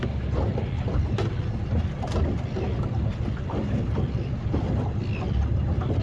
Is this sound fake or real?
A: real